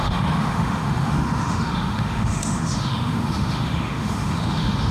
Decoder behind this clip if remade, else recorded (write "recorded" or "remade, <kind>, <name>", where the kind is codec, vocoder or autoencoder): remade, autoencoder, DAC-VAE